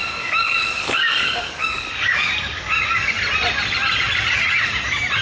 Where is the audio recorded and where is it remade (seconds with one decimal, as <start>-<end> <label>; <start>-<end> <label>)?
0.0-3.1 remade; 3.1-5.2 recorded